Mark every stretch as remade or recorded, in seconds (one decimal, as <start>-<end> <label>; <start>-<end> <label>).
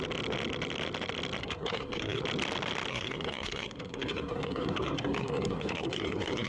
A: 0.0-1.4 recorded; 1.4-2.2 remade; 2.2-2.9 recorded; 2.9-6.5 remade